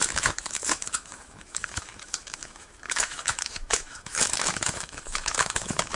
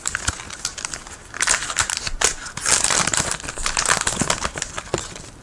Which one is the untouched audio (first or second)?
second